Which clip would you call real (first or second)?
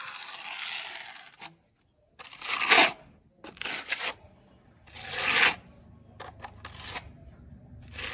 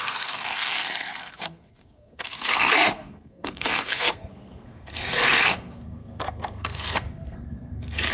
first